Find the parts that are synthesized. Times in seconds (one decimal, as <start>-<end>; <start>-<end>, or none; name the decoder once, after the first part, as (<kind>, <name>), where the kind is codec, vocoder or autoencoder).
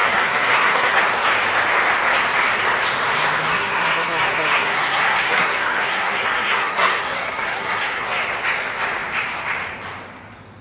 0.0-1.0 (codec, SNAC); 3.5-8.2